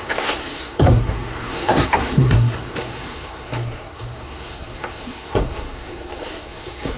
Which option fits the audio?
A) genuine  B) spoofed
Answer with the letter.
B